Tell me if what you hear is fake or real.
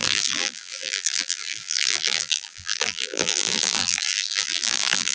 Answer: fake